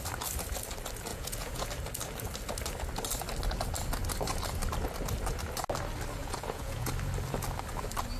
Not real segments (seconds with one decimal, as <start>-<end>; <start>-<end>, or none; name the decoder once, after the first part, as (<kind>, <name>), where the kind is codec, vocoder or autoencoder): 1.1-1.7 (vocoder, Vocos); 6.2-6.9